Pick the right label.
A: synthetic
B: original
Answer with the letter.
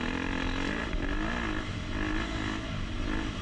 B